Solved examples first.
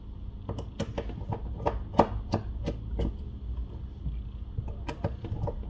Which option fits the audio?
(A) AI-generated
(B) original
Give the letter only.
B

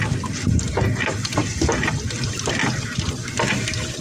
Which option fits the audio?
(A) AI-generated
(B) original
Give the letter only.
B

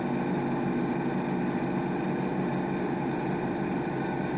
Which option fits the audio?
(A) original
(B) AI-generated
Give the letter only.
A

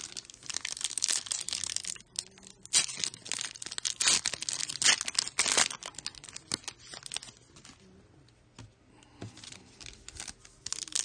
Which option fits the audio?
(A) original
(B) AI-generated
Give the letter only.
A